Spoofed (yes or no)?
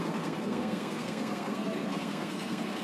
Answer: yes